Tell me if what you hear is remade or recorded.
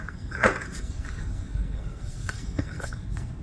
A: remade